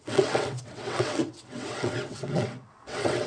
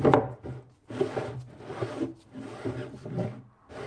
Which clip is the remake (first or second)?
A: first